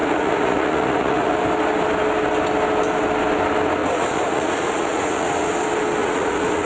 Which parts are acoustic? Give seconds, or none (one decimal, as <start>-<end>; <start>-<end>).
1.3-3.8; 5.5-6.0